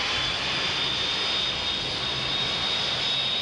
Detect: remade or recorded recorded